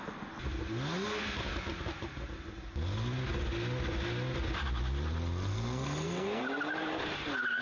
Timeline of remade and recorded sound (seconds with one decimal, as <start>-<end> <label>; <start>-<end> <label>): 0.0-5.5 recorded; 5.5-6.4 remade; 6.4-7.6 recorded